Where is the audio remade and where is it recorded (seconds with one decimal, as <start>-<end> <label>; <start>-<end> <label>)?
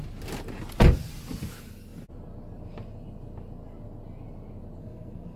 0.0-4.8 recorded; 4.8-5.4 remade